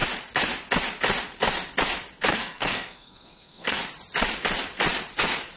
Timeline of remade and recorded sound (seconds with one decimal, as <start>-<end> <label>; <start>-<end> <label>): 0.0-2.3 recorded; 2.3-3.8 remade; 3.8-5.6 recorded